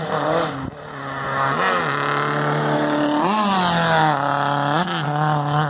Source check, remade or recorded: recorded